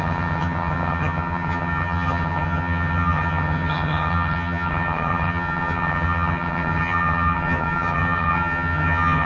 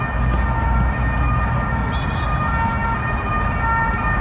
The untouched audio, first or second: second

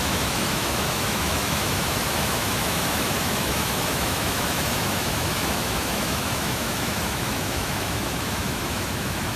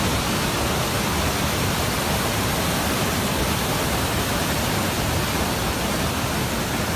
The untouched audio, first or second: second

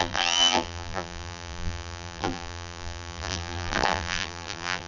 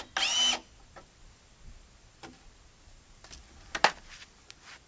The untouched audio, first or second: second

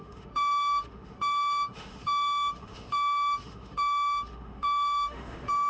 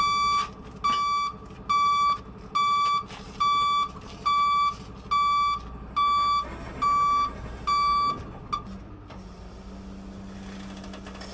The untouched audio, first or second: second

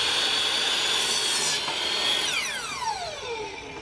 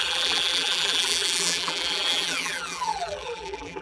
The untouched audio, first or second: first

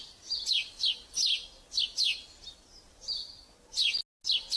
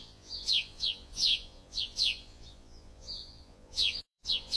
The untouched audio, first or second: first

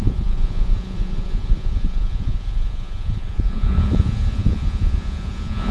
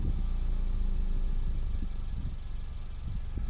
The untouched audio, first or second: second